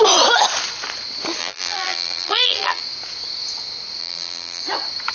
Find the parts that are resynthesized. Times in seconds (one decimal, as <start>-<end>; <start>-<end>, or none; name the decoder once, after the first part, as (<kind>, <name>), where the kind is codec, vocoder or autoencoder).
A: 1.4-2.8 (vocoder, BigVGAN v2); 4.0-4.6